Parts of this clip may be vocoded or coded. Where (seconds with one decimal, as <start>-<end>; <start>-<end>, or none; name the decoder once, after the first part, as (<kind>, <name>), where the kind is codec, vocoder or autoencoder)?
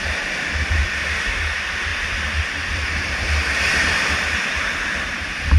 0.0-5.6 (vocoder, BigVGAN v2)